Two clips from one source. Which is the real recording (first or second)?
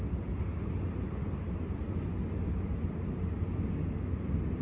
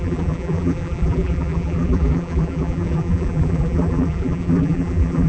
first